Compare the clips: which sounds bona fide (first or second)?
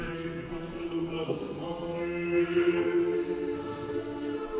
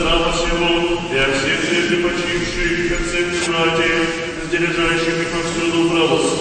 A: second